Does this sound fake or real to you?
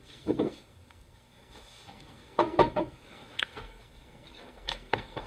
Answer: fake